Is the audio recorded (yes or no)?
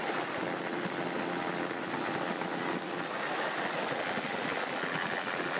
yes